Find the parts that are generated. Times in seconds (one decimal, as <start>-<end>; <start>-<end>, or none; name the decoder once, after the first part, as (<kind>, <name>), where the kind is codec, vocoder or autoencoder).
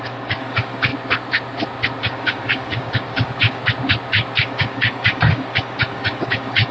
0.0-0.9 (codec, DAC); 2.0-3.6; 4.4-6.7